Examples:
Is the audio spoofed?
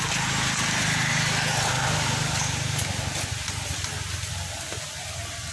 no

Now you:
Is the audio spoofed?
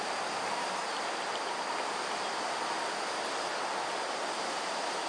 no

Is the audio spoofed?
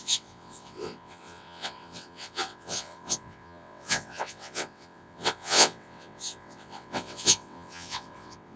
yes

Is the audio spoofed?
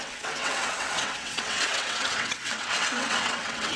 yes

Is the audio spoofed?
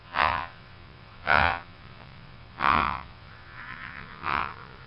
yes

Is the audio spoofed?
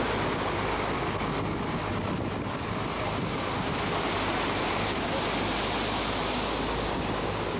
no